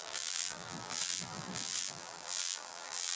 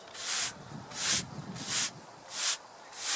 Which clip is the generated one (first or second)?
first